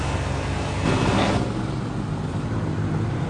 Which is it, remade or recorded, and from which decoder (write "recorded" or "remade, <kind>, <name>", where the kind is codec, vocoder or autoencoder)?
recorded